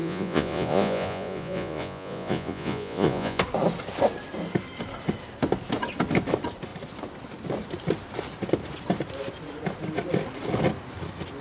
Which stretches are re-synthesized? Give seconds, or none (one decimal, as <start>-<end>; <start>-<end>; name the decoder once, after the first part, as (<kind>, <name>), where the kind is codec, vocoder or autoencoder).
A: 0.0-3.4 (vocoder, Vocos)